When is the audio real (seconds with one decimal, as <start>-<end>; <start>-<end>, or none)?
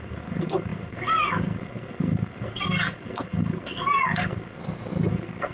4.6-5.1